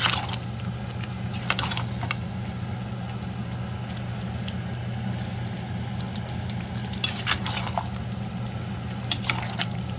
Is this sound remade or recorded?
recorded